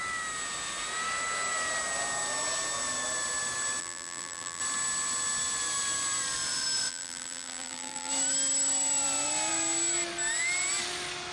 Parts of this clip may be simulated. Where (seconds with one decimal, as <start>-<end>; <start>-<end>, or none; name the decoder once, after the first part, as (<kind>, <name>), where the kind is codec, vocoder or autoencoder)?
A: 3.8-4.6 (vocoder, BigVGAN v2); 6.9-8.1